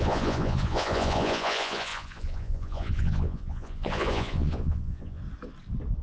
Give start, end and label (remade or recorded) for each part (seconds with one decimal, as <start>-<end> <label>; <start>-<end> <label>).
0.0-5.2 remade; 5.2-6.0 recorded